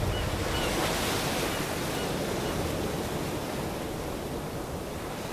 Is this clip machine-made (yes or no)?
no